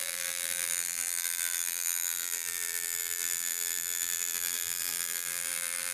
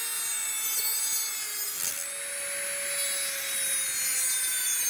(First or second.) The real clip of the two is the second